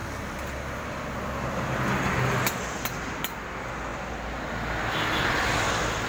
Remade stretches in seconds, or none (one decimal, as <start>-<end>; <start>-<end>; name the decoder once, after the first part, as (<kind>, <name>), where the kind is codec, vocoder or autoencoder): none